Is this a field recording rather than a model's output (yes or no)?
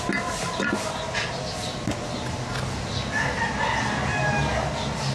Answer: yes